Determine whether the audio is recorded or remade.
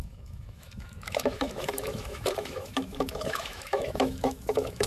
remade